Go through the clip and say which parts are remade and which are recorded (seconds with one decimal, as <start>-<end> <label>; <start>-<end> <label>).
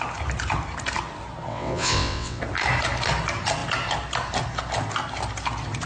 0.0-1.5 recorded; 1.5-2.4 remade; 2.4-5.9 recorded